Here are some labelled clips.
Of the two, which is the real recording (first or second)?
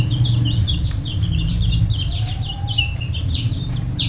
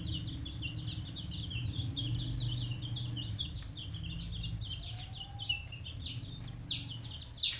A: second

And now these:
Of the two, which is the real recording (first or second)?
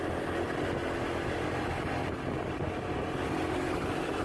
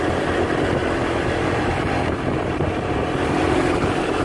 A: first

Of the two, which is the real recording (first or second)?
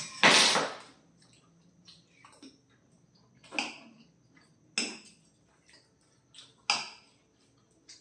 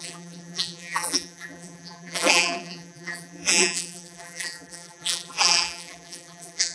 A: first